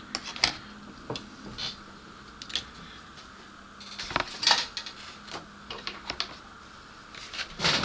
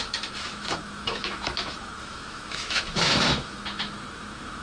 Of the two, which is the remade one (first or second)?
second